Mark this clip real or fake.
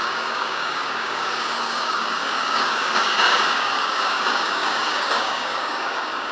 fake